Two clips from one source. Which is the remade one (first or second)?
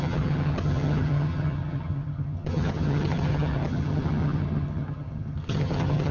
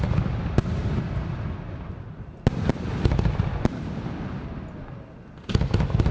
first